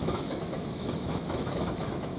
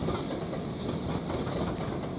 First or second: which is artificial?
first